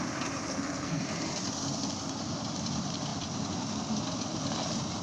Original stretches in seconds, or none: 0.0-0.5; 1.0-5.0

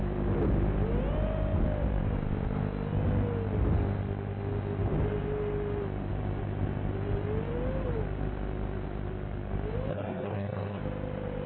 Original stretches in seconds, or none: 0.0-9.9; 10.8-11.5

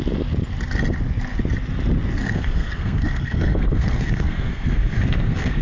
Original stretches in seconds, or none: 0.0-2.2